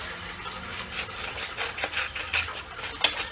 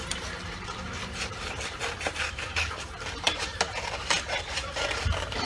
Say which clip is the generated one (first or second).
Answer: second